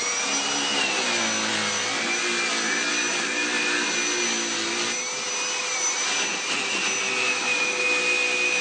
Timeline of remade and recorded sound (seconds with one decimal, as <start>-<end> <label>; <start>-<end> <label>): 0.0-8.6 recorded